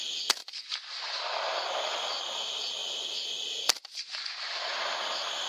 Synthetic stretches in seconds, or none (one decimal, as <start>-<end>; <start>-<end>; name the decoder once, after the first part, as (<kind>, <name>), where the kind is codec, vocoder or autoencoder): none